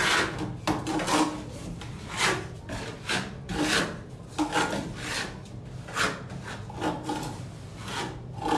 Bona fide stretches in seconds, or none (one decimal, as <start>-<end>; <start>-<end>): 0.0-0.9; 3.8-7.7